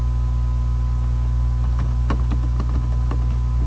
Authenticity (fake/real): real